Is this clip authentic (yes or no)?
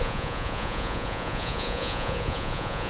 no